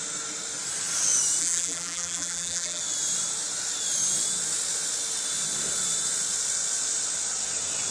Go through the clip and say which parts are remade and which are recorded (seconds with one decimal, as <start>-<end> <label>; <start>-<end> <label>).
0.0-1.4 recorded; 1.4-2.8 remade; 2.8-7.9 recorded

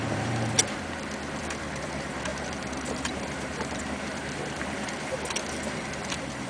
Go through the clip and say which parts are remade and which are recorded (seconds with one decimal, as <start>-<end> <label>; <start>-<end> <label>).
0.0-0.6 remade; 0.6-1.4 recorded; 1.4-6.5 remade

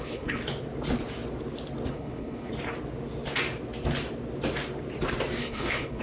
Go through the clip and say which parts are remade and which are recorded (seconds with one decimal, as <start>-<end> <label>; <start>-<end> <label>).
0.0-0.4 remade; 0.4-1.9 recorded; 1.9-2.5 remade; 2.5-5.4 recorded; 5.4-6.0 remade

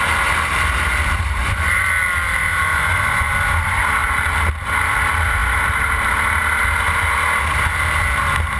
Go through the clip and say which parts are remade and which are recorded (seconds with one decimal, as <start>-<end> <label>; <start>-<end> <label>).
0.0-1.4 recorded; 1.4-1.9 remade; 1.9-2.7 recorded; 2.7-3.3 remade; 3.3-8.6 recorded